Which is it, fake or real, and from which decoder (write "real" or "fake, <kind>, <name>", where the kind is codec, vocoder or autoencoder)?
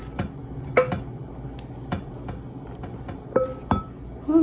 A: real